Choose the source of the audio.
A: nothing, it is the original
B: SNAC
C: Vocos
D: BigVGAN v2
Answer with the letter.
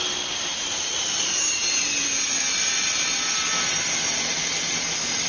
A